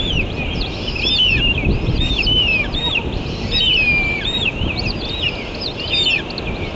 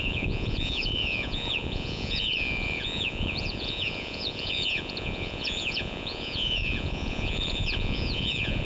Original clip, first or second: first